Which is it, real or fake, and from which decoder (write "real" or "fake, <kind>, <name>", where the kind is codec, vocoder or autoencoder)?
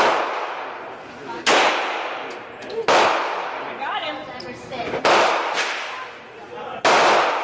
real